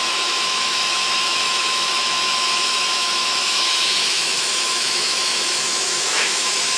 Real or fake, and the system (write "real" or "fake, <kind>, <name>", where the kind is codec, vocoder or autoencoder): fake, autoencoder, DAC-VAE